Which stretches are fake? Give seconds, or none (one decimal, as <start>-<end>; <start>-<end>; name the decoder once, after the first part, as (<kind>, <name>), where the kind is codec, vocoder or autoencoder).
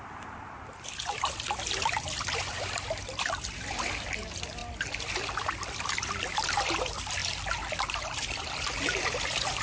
0.0-4.6 (vocoder, BigVGAN v2); 5.3-7.2; 7.8-9.6